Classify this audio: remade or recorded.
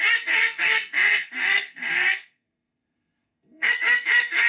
remade